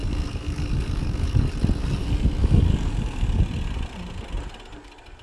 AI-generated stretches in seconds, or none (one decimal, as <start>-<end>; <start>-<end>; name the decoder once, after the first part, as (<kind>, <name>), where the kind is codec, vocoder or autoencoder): 0.0-1.5 (codec, DAC); 2.4-3.4